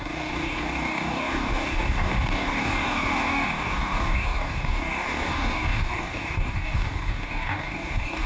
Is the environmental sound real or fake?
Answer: fake